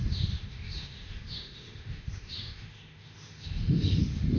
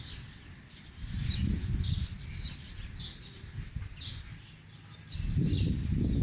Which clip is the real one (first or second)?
second